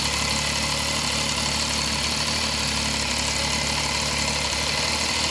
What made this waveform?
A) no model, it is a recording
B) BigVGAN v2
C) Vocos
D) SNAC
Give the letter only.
A